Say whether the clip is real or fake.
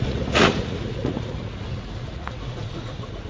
fake